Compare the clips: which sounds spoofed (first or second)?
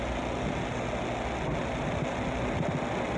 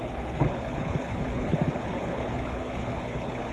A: second